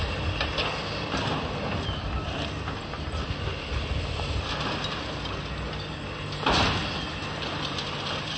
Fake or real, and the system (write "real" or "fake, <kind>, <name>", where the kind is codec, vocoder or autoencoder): real